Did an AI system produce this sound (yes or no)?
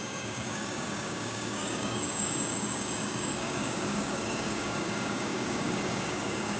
yes